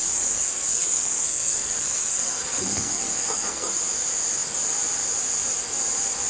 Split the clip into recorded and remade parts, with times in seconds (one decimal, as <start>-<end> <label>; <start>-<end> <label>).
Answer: 0.0-3.8 remade; 3.8-6.3 recorded